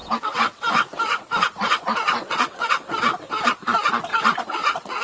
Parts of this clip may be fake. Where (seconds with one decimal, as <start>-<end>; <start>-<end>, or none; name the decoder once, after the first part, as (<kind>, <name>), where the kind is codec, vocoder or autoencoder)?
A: 0.0-3.0 (vocoder, WaveNeXt); 4.1-5.0

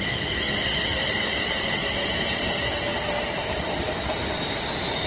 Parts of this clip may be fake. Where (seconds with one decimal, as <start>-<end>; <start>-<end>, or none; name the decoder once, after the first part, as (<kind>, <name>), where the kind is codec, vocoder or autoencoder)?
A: none

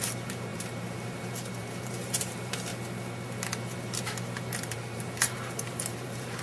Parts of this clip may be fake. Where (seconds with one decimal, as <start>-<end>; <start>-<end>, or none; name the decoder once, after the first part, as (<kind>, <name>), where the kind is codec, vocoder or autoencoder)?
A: 0.0-2.7 (vocoder, BigVGAN v2); 4.4-6.4

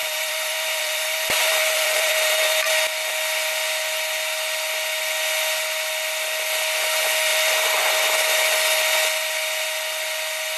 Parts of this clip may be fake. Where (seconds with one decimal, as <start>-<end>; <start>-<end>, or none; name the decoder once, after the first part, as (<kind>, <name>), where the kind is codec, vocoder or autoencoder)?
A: 0.0-2.7 (vocoder, BigVGAN v2); 7.3-7.8

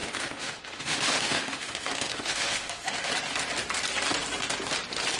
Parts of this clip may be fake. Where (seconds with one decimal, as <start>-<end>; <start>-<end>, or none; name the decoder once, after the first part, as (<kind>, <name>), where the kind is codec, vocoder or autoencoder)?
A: 0.0-3.1 (autoencoder, DAC-VAE)

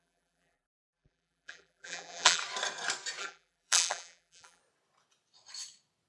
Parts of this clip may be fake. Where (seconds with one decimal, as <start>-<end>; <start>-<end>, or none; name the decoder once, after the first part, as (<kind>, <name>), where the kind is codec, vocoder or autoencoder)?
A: 0.0-2.4 (vocoder, BigVGAN v2); 3.2-4.6

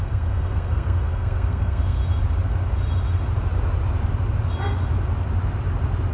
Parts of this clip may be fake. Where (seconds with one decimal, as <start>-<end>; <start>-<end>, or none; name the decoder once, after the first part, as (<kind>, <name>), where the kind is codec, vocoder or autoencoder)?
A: 0.0-2.0 (codec, SNAC)